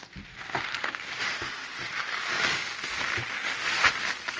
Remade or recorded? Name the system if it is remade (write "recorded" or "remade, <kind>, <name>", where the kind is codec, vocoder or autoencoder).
recorded